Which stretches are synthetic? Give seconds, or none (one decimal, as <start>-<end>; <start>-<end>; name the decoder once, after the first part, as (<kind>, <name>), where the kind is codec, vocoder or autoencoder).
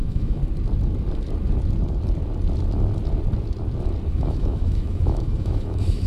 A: 0.0-0.4 (autoencoder, DAC-VAE); 4.1-6.1